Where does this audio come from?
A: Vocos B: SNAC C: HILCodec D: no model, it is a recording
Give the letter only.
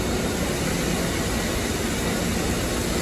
D